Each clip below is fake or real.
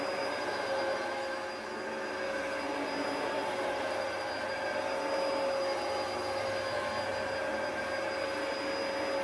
real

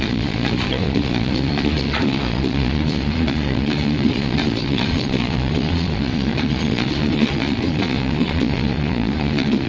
fake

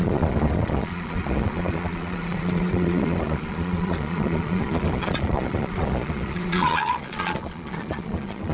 fake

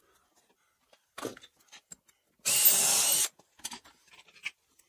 real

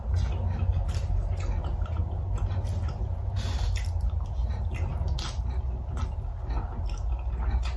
real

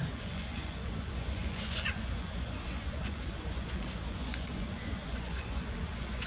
fake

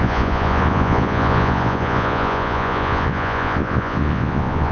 fake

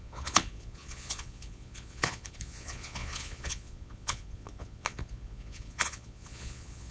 fake